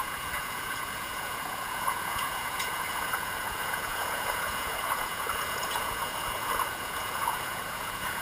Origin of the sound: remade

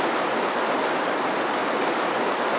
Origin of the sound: recorded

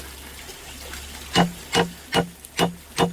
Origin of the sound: recorded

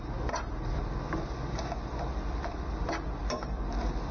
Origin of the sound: recorded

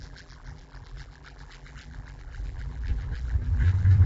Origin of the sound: remade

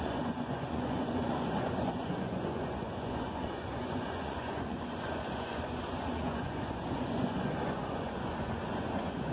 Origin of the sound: remade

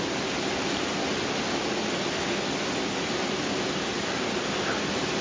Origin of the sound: recorded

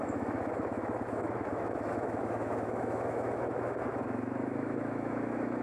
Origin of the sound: remade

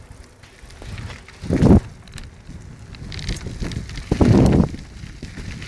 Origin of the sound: recorded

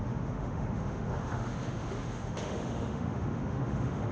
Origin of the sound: remade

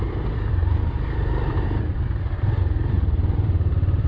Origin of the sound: remade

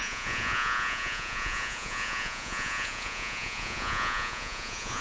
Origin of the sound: remade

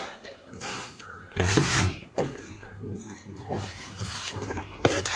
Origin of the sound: remade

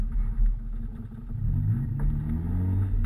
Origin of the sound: recorded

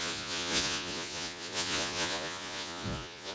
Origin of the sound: remade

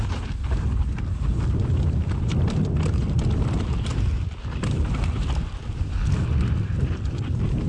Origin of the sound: recorded